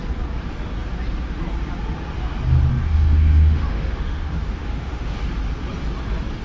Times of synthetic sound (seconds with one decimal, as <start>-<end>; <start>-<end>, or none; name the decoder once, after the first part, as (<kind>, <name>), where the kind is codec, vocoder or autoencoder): 2.7-5.2 (autoencoder, DAC-VAE)